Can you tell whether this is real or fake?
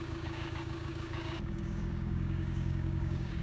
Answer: fake